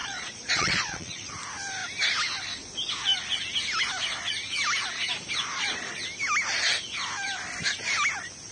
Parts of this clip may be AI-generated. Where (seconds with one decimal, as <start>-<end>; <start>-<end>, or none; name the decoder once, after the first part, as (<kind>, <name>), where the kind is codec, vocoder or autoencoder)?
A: 0.0-1.3 (vocoder, Vocos)